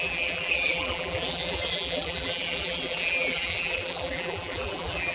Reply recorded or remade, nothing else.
remade